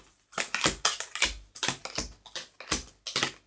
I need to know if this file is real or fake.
real